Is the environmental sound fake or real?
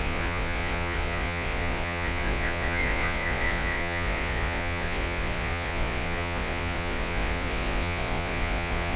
fake